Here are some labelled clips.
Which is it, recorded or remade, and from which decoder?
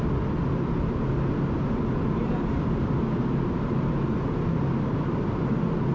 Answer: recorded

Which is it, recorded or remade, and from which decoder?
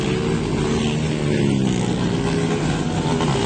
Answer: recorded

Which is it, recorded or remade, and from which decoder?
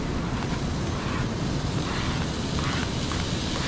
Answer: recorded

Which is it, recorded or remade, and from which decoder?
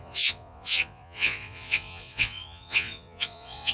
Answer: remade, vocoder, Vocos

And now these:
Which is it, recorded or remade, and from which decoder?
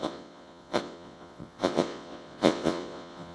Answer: remade, vocoder, Vocos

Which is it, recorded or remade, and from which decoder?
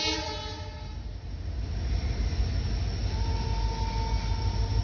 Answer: recorded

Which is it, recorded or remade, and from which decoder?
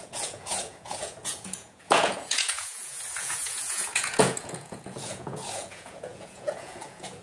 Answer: remade, vocoder, Vocos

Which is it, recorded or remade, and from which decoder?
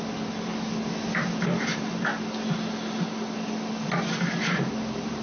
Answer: recorded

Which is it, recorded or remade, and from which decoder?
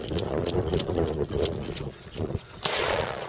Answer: remade, vocoder, Vocos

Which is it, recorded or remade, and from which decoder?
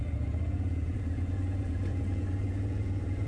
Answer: remade, vocoder, Vocos